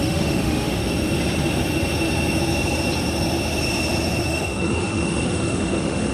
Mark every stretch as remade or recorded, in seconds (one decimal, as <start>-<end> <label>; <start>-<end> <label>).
0.0-0.8 remade; 0.8-4.2 recorded; 4.2-6.1 remade